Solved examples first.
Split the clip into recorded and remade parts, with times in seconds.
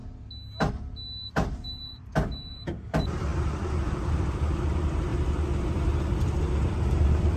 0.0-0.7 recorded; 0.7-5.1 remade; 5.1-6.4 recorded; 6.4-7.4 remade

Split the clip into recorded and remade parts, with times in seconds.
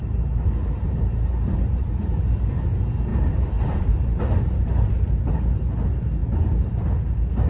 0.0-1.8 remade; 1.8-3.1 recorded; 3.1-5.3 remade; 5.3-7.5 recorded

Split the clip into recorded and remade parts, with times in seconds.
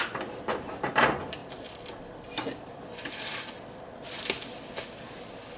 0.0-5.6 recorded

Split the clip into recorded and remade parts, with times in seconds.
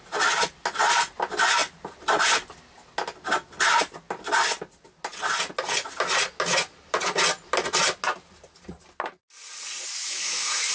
0.0-10.0 recorded; 10.0-10.7 remade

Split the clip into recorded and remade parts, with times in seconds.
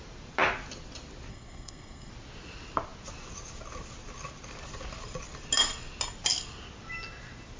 0.0-1.3 recorded; 1.3-2.1 remade; 2.1-7.6 recorded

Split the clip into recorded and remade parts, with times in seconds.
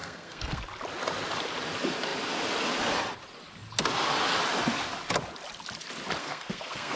0.0-0.6 remade; 0.6-6.2 recorded; 6.2-7.0 remade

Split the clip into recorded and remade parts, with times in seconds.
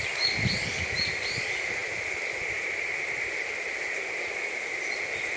0.0-5.4 recorded